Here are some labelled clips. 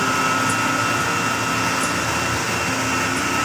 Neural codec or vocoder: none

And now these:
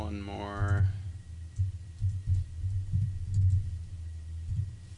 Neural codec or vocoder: none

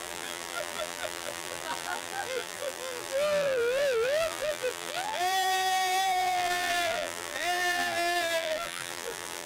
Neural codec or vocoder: vocoder, BigVGAN v2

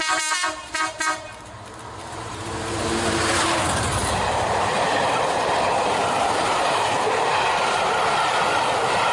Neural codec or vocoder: vocoder, BigVGAN v2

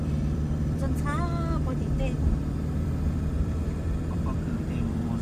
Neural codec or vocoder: vocoder, BigVGAN v2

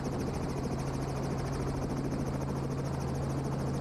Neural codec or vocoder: none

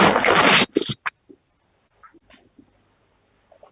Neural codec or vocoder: none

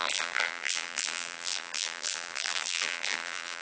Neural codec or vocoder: vocoder, BigVGAN v2